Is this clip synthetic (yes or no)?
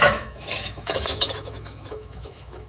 yes